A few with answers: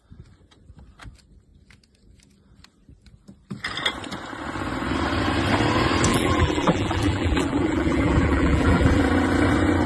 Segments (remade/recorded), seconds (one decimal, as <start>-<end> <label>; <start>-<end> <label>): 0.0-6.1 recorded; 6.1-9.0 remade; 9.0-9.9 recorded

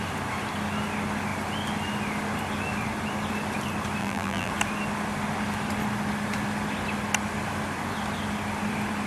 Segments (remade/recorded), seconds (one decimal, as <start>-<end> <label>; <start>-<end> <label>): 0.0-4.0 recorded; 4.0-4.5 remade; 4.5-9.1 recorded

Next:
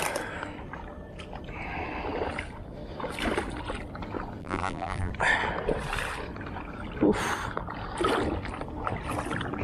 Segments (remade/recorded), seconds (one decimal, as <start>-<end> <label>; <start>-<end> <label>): 0.0-4.4 recorded; 4.4-5.1 remade; 5.1-9.6 recorded